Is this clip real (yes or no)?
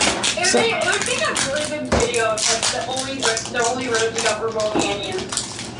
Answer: yes